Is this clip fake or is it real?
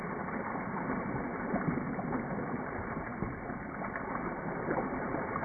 real